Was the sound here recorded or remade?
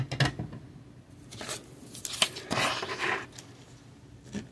recorded